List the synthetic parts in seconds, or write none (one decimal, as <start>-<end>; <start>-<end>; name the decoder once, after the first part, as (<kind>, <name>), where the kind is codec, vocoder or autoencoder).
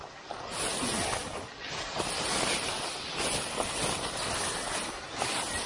none